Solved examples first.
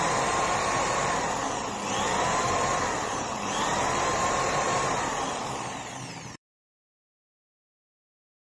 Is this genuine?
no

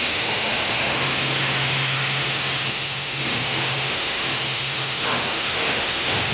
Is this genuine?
no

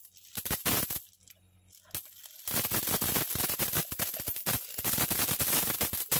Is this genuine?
yes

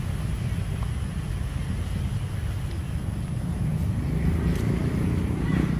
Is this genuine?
yes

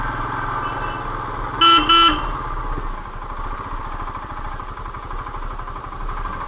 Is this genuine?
yes